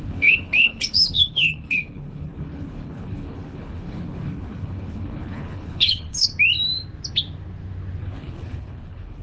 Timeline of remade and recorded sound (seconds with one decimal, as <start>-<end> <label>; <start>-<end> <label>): 0.0-6.3 remade; 6.3-8.0 recorded; 8.0-9.2 remade